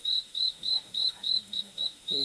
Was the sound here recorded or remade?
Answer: remade